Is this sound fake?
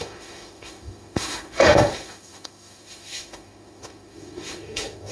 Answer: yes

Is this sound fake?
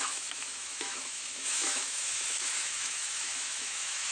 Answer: yes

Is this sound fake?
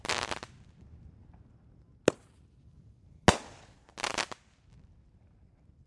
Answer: no